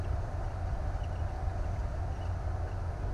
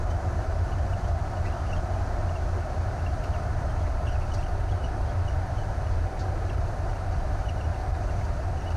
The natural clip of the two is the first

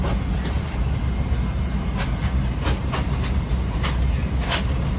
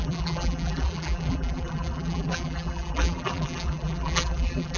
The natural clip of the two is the first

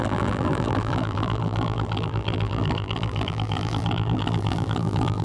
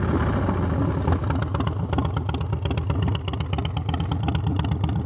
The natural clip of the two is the second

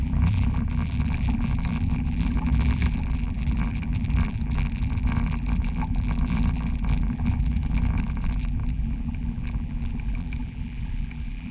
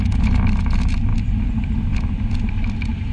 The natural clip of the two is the second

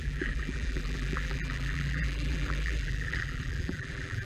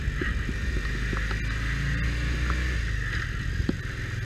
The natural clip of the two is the second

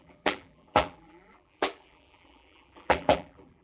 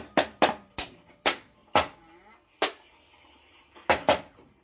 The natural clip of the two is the second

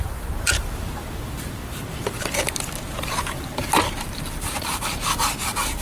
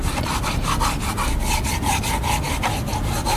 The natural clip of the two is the second